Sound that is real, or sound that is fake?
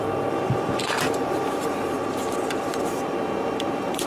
fake